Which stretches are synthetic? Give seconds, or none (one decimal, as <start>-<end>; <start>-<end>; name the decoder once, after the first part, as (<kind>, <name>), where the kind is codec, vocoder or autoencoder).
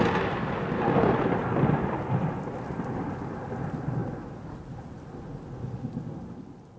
1.4-3.4 (vocoder, BigVGAN v2); 4.0-4.7